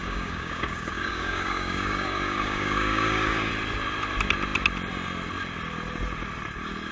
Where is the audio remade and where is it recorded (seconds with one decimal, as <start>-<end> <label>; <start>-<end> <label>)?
0.0-3.5 remade; 3.5-6.9 recorded